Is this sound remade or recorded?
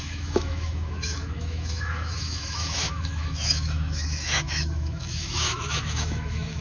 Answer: remade